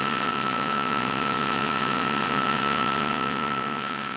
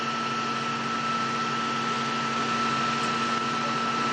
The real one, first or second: second